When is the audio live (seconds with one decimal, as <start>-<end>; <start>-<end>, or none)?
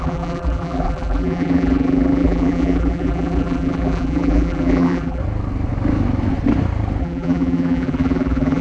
5.2-7.0